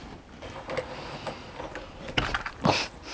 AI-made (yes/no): no